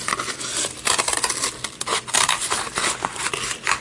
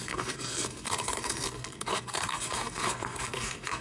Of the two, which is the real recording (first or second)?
first